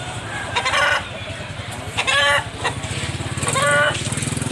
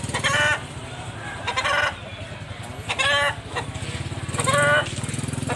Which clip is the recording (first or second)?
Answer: second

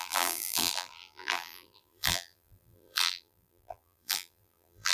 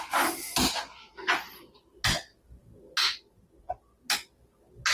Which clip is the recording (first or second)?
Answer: second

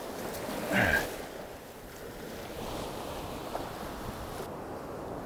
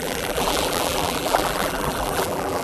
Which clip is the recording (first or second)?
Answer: first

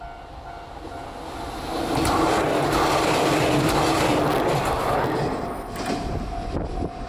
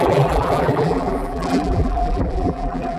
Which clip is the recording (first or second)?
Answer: first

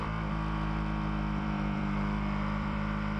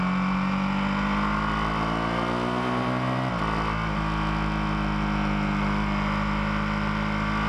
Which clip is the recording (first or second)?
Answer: second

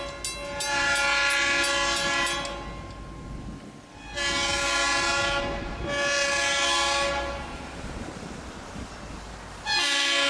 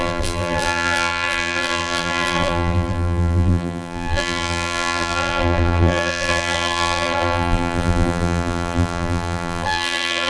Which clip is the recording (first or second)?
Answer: first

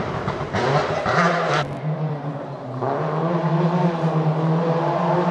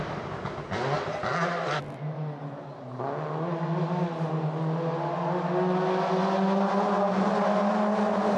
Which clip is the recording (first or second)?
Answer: second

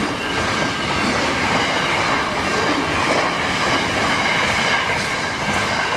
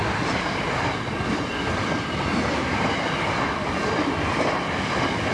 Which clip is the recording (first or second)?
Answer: first